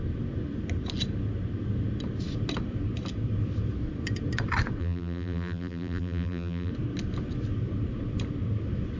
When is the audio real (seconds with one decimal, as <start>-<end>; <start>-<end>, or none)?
0.0-4.8; 6.7-9.0